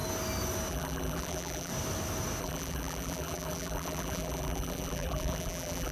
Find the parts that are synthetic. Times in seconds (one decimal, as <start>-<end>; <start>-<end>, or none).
0.7-1.7; 2.4-5.9